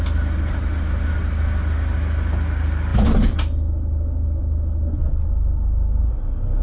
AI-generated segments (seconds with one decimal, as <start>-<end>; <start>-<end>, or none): none